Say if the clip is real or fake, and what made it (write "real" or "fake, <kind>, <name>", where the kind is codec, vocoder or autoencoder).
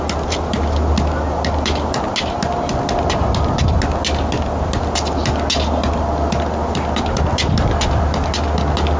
real